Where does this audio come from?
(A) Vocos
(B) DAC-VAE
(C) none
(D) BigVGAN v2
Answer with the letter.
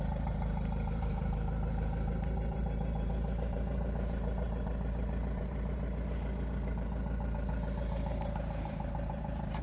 D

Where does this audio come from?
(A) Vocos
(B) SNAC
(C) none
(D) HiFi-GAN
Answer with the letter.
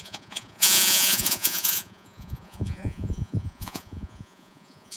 A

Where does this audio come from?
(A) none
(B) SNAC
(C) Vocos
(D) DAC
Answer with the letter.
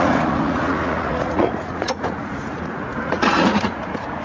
C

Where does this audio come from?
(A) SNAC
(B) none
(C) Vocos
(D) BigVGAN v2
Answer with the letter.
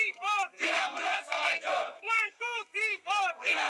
A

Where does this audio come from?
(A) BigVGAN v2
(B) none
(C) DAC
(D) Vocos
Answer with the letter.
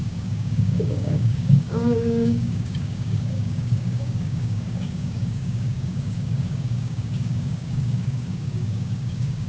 C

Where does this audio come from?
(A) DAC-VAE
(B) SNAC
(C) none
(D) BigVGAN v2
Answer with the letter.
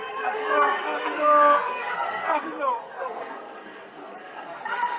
B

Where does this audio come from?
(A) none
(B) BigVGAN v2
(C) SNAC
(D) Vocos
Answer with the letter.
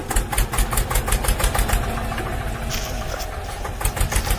A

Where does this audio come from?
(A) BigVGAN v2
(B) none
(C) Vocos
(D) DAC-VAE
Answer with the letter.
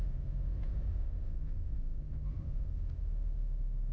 D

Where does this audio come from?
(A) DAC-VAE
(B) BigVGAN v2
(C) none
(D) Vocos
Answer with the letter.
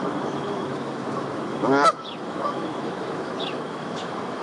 A